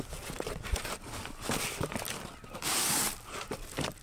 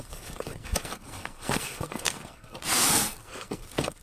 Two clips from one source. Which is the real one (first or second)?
first